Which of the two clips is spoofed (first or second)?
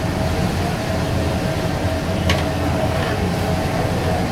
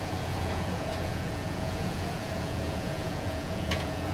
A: second